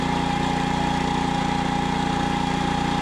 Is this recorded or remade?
recorded